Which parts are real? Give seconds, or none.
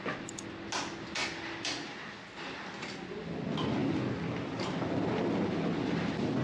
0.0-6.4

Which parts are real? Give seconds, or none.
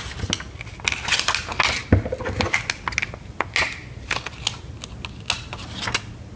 0.0-6.4